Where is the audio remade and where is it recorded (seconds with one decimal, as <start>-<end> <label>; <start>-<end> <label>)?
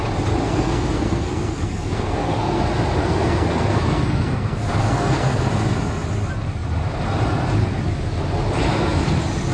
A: 0.0-0.4 recorded; 0.4-2.6 remade; 2.6-3.0 recorded; 3.0-5.4 remade; 5.4-9.5 recorded